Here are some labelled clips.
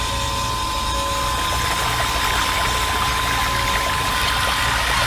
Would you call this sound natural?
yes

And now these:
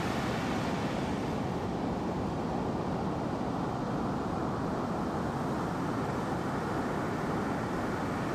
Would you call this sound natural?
yes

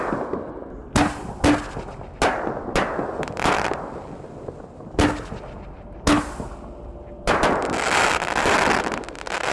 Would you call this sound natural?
yes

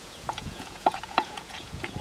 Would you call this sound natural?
no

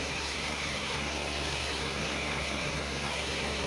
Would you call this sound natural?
no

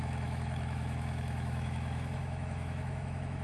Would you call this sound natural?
no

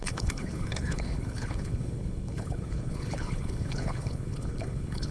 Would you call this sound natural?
no